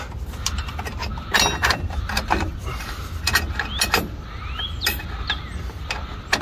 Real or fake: real